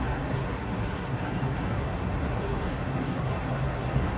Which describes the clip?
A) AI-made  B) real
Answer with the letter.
A